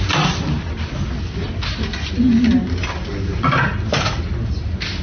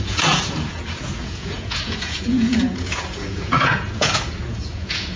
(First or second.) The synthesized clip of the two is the second